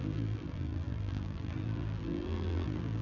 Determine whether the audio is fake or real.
fake